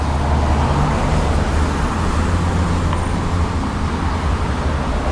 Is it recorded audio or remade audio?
recorded